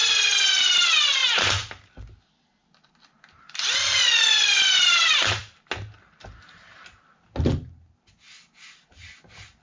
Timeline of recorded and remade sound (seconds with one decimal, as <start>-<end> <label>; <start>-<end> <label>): 0.0-9.6 recorded